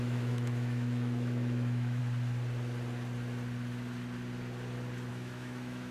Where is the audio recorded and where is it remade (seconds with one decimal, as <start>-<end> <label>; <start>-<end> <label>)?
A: 0.0-2.0 remade; 2.0-5.1 recorded; 5.1-5.9 remade